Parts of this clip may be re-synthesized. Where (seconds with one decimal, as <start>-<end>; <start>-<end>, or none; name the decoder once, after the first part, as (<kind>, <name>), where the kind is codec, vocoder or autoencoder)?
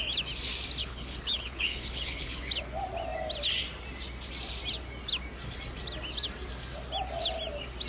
0.8-2.5 (codec, HILCodec)